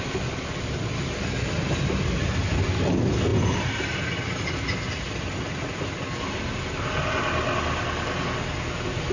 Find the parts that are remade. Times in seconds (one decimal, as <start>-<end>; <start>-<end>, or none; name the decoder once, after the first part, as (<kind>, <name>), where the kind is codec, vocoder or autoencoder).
none